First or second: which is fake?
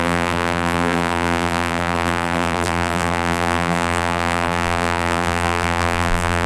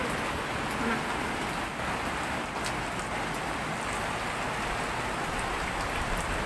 first